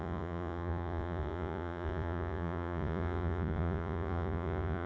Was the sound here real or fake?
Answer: fake